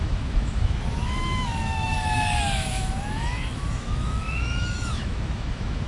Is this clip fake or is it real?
fake